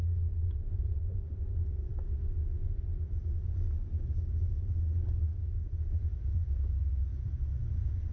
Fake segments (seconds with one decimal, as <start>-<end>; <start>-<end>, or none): 0.4-1.9; 5.3-6.3; 7.1-8.1